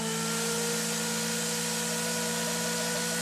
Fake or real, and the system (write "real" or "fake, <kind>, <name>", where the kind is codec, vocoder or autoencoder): real